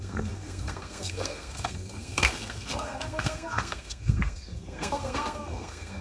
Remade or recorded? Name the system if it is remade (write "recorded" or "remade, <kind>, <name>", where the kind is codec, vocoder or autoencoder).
remade, codec, SNAC